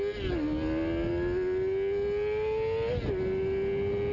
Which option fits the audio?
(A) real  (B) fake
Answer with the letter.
A